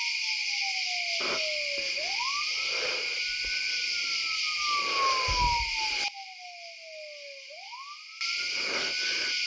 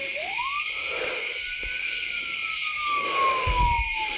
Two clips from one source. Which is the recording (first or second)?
first